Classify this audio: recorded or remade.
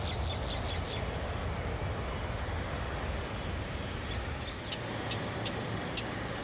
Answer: recorded